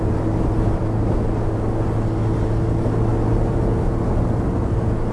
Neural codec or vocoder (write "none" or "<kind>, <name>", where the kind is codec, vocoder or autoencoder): none